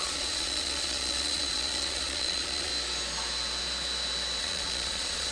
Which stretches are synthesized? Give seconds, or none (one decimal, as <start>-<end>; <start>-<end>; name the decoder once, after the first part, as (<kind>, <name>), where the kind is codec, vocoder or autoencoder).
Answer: 0.0-2.7 (vocoder, Vocos); 4.4-5.3